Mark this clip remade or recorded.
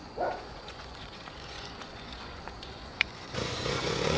remade